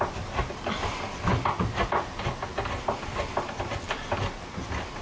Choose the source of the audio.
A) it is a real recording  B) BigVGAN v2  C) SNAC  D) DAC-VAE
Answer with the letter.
A